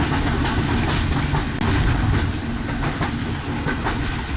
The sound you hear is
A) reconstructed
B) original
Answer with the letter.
B